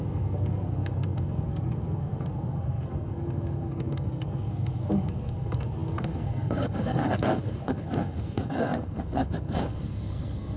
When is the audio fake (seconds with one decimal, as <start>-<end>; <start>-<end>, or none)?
0.0-10.6